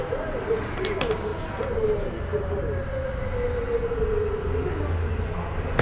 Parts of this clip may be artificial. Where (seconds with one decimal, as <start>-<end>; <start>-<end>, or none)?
none